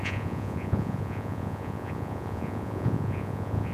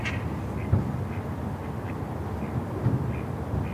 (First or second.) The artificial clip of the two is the first